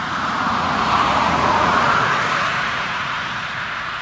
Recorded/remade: remade